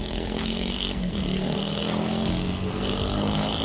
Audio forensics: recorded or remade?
remade